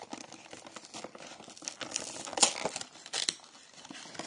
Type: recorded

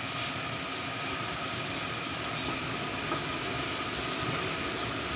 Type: recorded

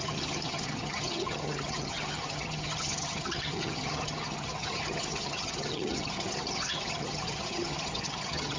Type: remade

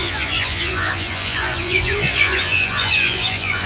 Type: remade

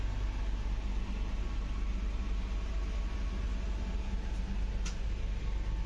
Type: recorded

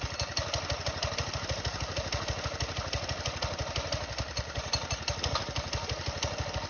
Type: recorded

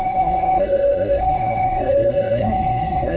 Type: remade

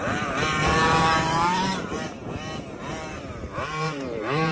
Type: remade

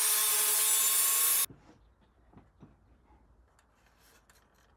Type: recorded